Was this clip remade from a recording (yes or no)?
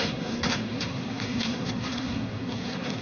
yes